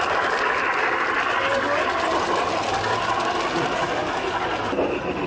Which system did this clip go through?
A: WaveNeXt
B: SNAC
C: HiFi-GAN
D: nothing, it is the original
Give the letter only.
D